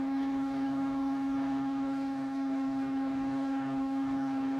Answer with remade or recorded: remade